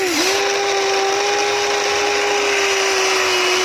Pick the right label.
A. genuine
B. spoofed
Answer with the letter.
A